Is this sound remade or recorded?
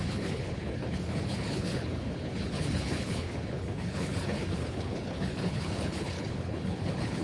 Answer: remade